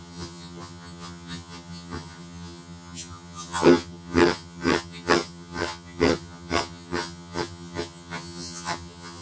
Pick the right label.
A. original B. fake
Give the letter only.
B